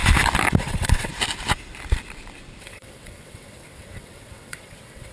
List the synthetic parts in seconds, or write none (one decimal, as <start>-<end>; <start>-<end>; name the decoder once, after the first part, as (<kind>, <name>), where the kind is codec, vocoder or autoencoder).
0.6-1.1 (vocoder, WaveNeXt); 2.6-5.1

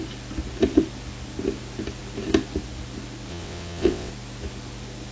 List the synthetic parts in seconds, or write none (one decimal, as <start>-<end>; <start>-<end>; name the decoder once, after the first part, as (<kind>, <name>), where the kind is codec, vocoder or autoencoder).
3.3-4.1 (vocoder, WaveNeXt)

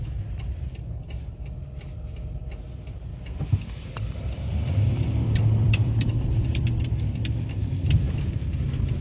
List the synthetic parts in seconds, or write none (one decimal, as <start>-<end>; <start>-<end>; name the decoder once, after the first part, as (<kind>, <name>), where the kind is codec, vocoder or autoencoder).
3.1-8.1 (vocoder, BigVGAN v2)